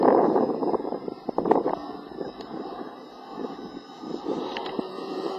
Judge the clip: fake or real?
fake